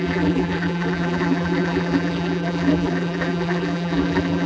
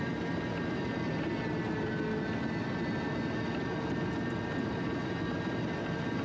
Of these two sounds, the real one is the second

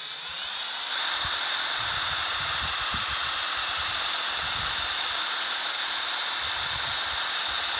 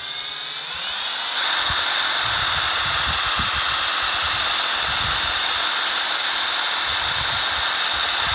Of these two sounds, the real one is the second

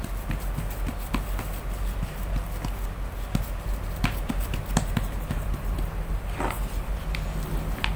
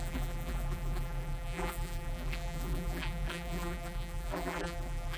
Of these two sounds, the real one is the first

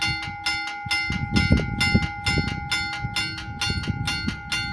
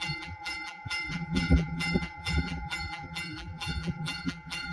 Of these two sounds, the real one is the first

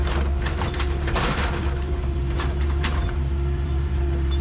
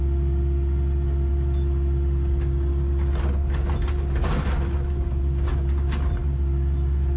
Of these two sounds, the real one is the second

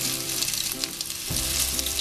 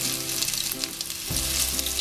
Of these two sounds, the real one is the second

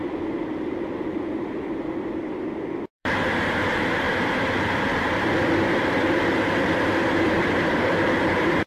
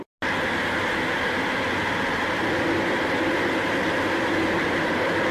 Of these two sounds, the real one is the second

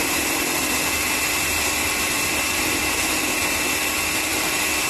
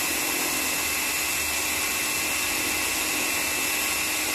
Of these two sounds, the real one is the second